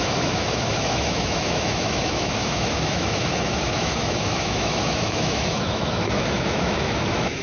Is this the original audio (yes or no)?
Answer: no